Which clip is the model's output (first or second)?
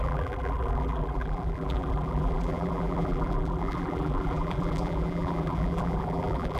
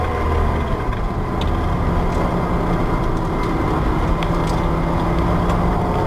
first